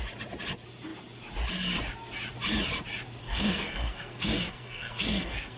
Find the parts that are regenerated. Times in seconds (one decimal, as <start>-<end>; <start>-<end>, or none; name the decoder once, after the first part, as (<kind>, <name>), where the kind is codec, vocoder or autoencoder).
3.2-5.6 (codec, SNAC)